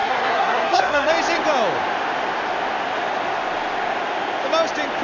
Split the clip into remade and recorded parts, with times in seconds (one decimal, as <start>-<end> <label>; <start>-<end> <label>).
0.0-1.1 remade; 1.1-5.0 recorded